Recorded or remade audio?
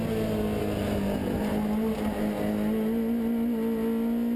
recorded